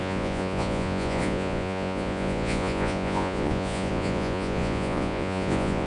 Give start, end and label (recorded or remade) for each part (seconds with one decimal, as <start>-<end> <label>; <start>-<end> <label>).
0.0-5.9 remade